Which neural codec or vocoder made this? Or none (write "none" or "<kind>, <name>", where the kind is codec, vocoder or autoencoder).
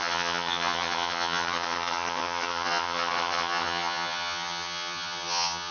vocoder, HiFi-GAN